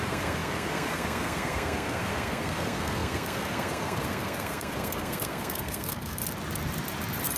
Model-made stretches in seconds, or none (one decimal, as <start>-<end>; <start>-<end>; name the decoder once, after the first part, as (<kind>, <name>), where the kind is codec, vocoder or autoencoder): 0.0-6.2 (codec, SNAC)